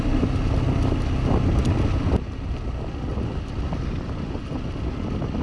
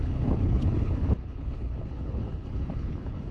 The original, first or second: first